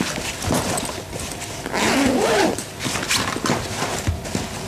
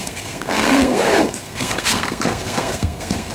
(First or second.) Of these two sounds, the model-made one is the second